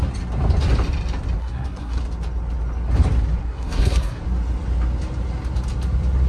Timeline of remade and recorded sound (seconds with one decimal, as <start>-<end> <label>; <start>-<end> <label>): 0.0-1.4 recorded; 1.4-2.0 remade; 2.0-3.4 recorded; 3.4-4.2 remade; 4.2-6.3 recorded

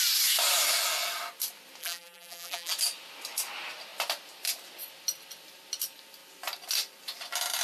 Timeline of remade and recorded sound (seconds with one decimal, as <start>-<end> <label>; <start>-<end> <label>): 0.0-1.8 recorded; 1.8-2.7 remade; 2.7-7.6 recorded

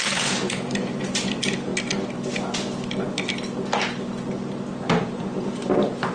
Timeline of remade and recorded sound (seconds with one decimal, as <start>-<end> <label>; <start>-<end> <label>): 0.0-1.7 remade; 1.7-4.7 recorded; 4.7-6.1 remade

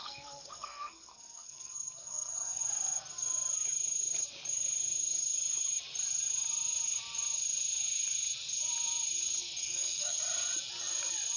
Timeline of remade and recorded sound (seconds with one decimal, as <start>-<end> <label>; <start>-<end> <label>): 0.0-2.6 remade; 2.6-9.6 recorded; 9.6-10.2 remade; 10.2-11.4 recorded

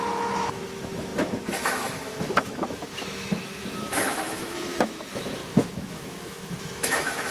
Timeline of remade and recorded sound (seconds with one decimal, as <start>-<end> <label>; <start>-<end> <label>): 0.0-7.3 remade